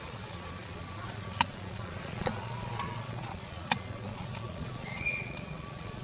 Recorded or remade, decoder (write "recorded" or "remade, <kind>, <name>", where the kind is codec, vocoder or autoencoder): remade, vocoder, Vocos